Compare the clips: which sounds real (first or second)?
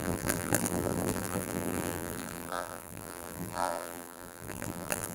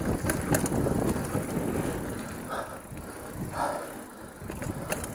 second